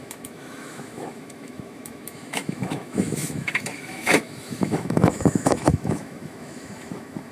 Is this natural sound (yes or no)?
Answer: no